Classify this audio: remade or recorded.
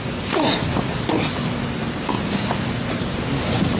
recorded